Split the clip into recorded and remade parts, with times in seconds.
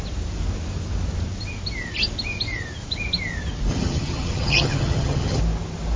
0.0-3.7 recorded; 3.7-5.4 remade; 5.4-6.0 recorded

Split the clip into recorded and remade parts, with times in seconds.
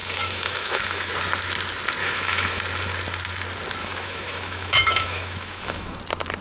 0.0-1.1 remade; 1.1-2.0 recorded; 2.0-2.6 remade; 2.6-3.8 recorded; 3.8-6.0 remade; 6.0-6.4 recorded